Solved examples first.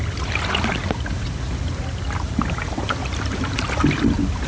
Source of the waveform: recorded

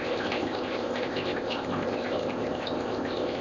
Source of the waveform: remade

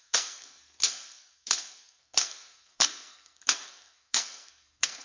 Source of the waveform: remade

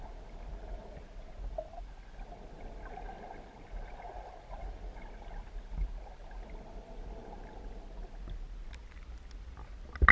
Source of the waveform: recorded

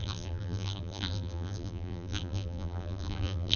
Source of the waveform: remade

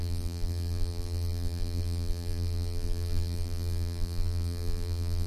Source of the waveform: remade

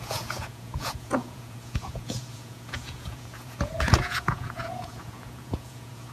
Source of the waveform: remade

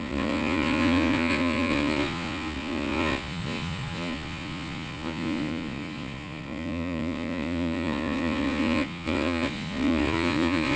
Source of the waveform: remade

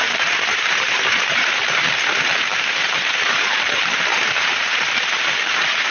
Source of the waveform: remade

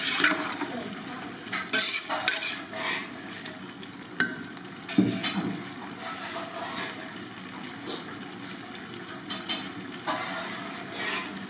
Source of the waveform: recorded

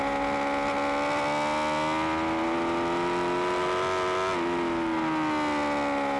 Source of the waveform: recorded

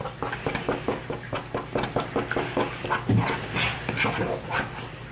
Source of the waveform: recorded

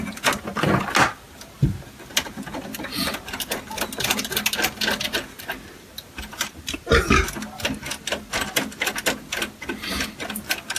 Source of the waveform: recorded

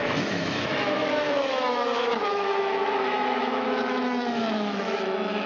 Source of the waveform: remade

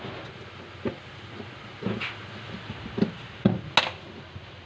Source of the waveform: recorded